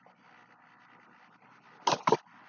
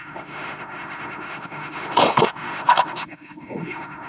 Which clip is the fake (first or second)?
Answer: second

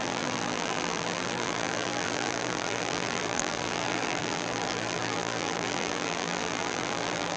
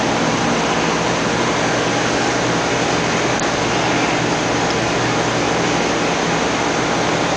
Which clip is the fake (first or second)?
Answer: first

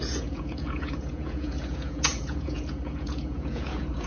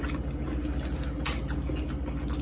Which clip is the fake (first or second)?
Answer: first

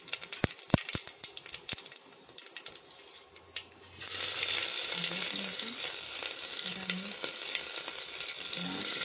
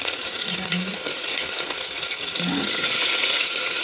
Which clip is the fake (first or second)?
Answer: second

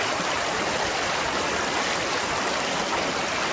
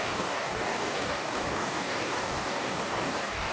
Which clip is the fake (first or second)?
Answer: second